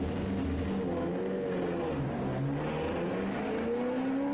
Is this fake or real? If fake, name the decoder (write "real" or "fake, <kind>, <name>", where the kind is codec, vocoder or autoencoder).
real